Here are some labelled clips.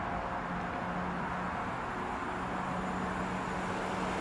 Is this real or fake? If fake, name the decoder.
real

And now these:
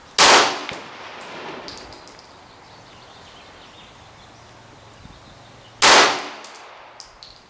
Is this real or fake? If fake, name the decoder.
real